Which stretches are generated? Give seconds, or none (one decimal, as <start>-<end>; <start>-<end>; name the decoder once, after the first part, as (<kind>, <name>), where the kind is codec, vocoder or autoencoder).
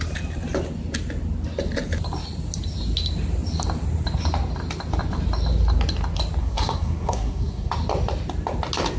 6.4-7.7 (codec, SNAC)